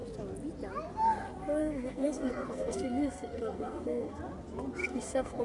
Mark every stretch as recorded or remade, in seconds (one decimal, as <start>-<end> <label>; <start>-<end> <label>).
0.0-1.6 recorded; 1.6-4.2 remade; 4.2-4.8 recorded; 4.8-5.4 remade